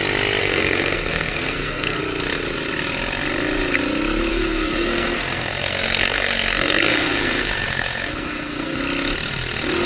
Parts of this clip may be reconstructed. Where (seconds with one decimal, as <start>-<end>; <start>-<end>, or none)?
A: 0.4-2.0; 4.3-8.8